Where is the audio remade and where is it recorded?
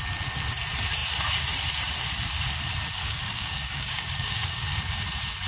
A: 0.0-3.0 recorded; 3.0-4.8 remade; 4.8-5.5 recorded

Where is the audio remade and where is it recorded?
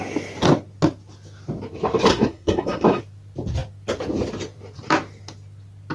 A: 0.0-2.1 recorded; 2.1-3.0 remade; 3.0-5.9 recorded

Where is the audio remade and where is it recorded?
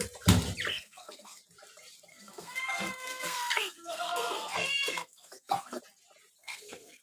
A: 0.0-0.7 recorded; 0.7-1.4 remade; 1.4-2.1 recorded; 2.1-5.8 remade; 5.8-6.4 recorded; 6.4-7.0 remade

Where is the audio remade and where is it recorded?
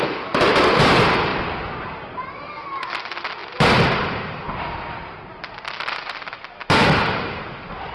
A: 0.0-7.9 recorded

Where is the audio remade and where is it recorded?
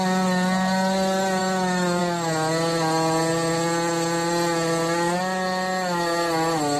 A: 0.0-1.4 recorded; 1.4-2.0 remade; 2.0-6.8 recorded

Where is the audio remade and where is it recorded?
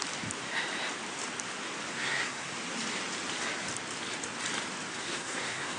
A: 0.0-1.9 recorded; 1.9-2.5 remade; 2.5-5.0 recorded; 5.0-5.8 remade